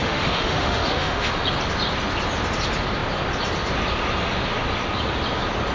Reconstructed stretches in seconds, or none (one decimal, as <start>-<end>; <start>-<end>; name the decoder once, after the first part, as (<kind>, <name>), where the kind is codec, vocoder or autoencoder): 0.0-1.3 (autoencoder, DAC-VAE)